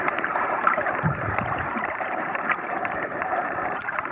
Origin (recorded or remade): remade